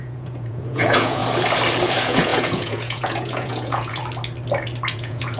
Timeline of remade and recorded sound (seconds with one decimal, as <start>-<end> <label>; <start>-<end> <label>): 0.0-1.2 remade; 1.2-1.9 recorded; 1.9-4.0 remade; 4.0-4.9 recorded; 4.9-5.4 remade